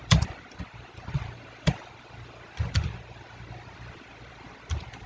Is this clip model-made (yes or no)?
yes